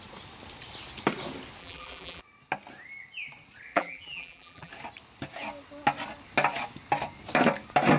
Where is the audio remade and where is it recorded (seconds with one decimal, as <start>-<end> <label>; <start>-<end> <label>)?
0.0-1.6 recorded; 1.6-2.2 remade; 2.2-3.7 recorded; 3.7-4.7 remade; 4.7-8.0 recorded